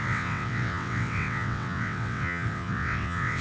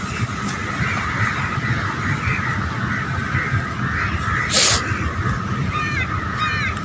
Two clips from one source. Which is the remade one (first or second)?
first